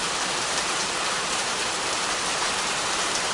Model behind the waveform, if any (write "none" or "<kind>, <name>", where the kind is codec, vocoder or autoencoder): vocoder, BigVGAN v2